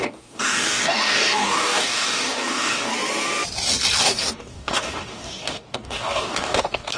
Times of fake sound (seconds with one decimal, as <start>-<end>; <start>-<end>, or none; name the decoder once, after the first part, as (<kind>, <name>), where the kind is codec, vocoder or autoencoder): 0.0-2.9 (codec, DAC); 4.0-7.0